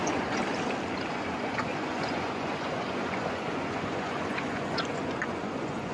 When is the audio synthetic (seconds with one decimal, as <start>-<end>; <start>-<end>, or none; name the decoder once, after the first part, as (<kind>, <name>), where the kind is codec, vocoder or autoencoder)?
0.0-0.4 (vocoder, Vocos); 1.1-5.9

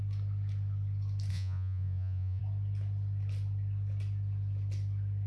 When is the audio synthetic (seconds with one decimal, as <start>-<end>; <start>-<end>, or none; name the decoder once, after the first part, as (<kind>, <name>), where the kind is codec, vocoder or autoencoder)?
1.3-2.4 (vocoder, Vocos)

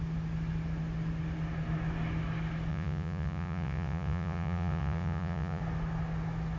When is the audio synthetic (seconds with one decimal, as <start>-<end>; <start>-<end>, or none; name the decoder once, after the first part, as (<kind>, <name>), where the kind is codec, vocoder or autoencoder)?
2.7-5.6 (vocoder, Vocos)

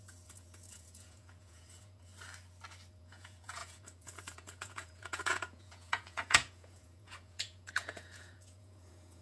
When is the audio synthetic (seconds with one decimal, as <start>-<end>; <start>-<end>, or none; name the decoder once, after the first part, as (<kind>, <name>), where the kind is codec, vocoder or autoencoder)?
0.0-2.1 (vocoder, Vocos); 2.9-9.2

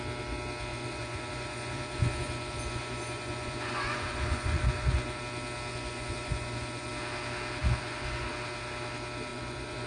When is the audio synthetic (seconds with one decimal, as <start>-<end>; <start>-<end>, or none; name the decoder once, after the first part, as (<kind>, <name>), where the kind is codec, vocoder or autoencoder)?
0.7-5.2 (vocoder, Vocos); 5.7-6.9; 7.6-8.3; 9.3-9.9